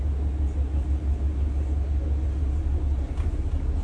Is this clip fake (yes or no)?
no